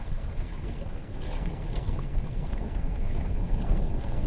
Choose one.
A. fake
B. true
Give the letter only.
A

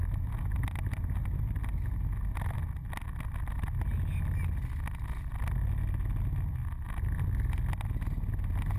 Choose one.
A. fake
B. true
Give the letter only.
B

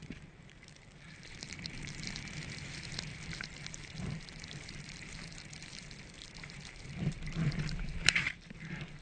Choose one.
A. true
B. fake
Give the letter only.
B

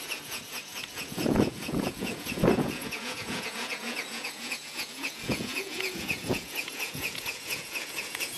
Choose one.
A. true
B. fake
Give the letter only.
B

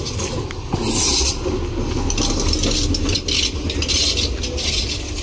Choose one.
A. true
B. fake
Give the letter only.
A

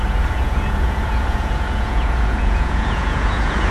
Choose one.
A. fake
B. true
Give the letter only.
A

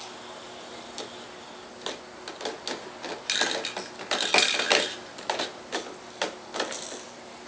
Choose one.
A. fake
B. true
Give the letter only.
B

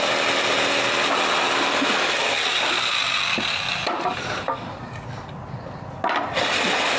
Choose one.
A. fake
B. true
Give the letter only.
B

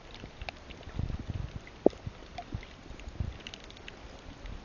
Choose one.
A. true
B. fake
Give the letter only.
A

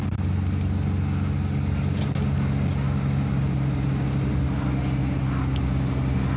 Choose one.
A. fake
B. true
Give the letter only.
B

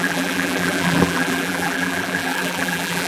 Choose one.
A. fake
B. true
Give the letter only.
A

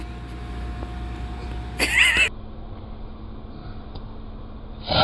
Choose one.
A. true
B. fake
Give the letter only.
A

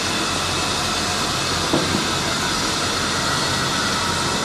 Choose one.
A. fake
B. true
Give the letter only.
B